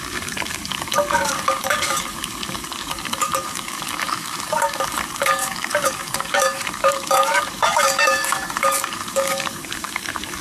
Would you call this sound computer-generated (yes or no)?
yes